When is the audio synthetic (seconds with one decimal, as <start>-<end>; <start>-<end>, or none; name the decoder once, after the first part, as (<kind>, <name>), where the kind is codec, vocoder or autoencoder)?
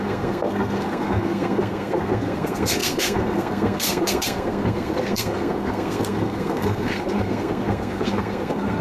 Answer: 0.0-8.8 (codec, SNAC)